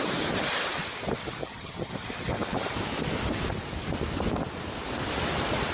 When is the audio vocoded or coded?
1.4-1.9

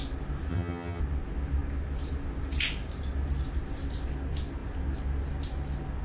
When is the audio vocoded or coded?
0.5-1.0